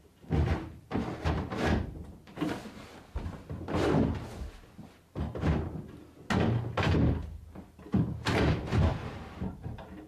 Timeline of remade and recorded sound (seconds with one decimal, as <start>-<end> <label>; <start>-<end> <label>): 0.0-8.9 recorded; 8.9-10.1 remade